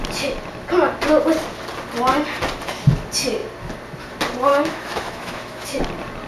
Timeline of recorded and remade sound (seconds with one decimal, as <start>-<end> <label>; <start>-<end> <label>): 0.0-4.5 recorded; 4.5-5.8 remade; 5.8-6.3 recorded